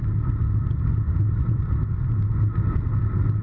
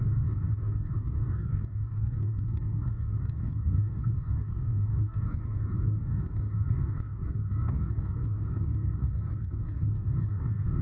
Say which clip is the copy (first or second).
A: second